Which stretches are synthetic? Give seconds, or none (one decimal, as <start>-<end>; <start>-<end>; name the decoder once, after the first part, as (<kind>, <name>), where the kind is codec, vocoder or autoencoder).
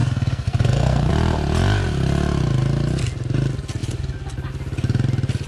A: 0.0-1.1 (codec, SNAC)